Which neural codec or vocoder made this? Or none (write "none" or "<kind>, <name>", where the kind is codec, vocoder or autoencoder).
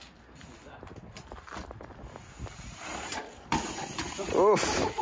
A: none